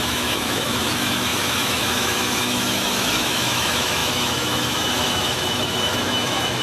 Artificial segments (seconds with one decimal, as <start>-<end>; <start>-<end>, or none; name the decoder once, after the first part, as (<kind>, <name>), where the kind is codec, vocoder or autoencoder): 0.0-6.6 (autoencoder, DAC-VAE)